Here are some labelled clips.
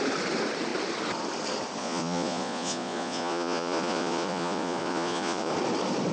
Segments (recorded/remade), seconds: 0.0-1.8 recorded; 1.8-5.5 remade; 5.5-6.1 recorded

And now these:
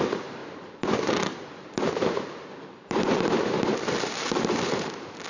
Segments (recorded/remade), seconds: 0.0-5.3 remade

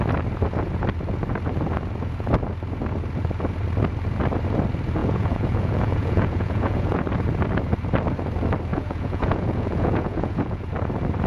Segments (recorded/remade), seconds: 0.0-5.0 recorded; 5.0-7.0 remade; 7.0-8.7 recorded; 8.7-10.7 remade; 10.7-11.3 recorded

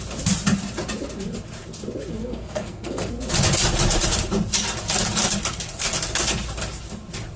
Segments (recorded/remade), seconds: 0.0-2.2 recorded; 2.2-3.1 remade; 3.1-7.4 recorded

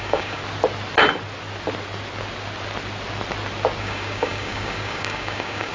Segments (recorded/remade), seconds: 0.0-0.4 remade; 0.4-3.8 recorded; 3.8-5.7 remade

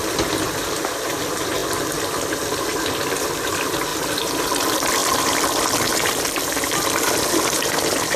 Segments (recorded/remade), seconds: 0.0-1.1 remade; 1.1-3.9 recorded; 3.9-4.6 remade; 4.6-5.0 recorded; 5.0-8.2 remade

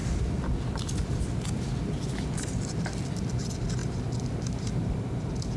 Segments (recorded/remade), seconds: 0.0-3.4 remade; 3.4-3.8 recorded; 3.8-5.0 remade; 5.0-5.6 recorded